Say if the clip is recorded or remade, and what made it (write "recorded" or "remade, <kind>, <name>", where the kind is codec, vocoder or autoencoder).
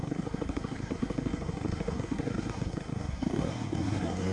remade, codec, SNAC